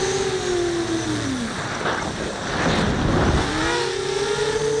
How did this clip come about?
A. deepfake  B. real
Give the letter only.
B